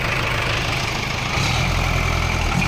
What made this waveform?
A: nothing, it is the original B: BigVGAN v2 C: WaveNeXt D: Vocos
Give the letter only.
A